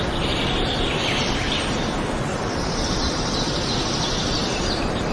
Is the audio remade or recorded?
recorded